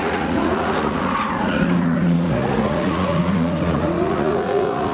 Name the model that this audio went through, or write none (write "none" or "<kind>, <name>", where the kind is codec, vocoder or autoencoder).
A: vocoder, Vocos